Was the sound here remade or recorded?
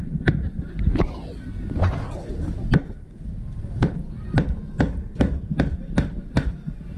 recorded